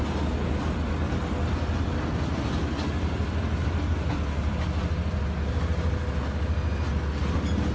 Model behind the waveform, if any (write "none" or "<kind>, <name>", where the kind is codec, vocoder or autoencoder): none